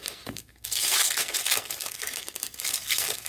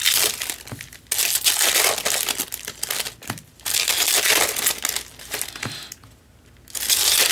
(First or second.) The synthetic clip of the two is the first